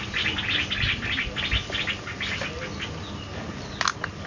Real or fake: real